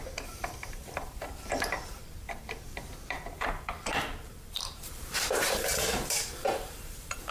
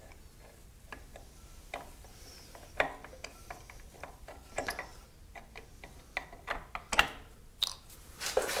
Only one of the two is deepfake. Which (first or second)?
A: first